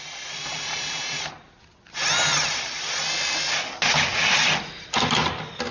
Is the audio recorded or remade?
recorded